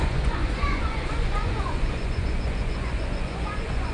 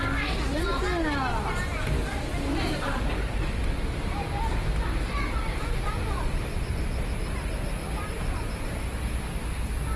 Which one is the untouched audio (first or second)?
second